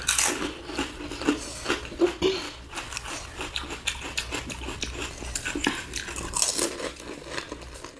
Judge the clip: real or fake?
real